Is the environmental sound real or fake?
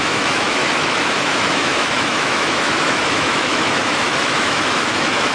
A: fake